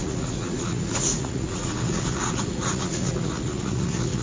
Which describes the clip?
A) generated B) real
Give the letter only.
A